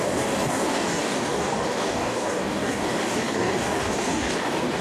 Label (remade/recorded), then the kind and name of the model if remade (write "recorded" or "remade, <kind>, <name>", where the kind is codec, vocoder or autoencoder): remade, codec, DAC